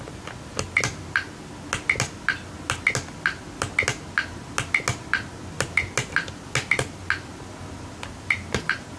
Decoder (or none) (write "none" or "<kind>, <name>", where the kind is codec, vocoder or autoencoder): none